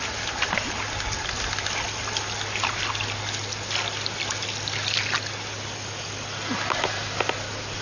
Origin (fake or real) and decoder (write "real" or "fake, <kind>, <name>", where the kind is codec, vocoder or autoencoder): real